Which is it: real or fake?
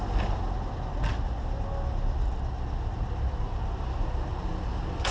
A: real